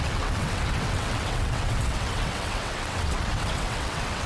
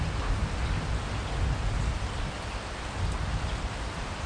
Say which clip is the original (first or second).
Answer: second